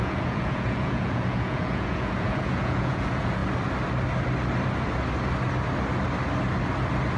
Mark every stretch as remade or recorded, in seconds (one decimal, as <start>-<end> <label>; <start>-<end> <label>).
0.0-3.4 remade; 3.4-7.2 recorded